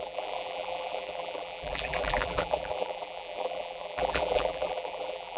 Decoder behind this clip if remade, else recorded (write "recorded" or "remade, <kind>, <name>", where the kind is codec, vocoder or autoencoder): remade, vocoder, BigVGAN v2